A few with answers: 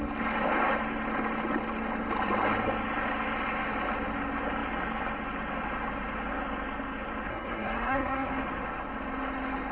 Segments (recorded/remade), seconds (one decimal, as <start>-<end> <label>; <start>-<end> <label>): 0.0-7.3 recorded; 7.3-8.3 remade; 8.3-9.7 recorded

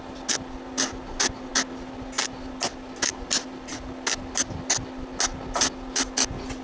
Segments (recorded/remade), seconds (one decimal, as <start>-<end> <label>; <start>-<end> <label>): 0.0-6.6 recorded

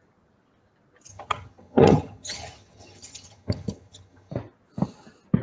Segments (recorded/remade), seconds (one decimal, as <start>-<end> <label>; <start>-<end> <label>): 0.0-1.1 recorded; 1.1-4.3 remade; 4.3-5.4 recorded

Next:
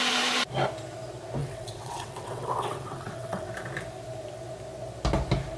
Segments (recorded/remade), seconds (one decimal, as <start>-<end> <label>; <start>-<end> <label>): 0.0-1.4 recorded; 1.4-3.5 remade; 3.5-5.6 recorded